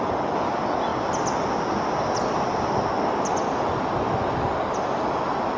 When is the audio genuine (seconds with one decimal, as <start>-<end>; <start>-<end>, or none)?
0.0-5.6